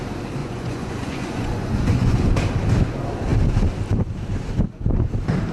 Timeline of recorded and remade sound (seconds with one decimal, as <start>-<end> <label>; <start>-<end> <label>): 0.0-0.4 recorded; 0.4-2.3 remade; 2.3-5.5 recorded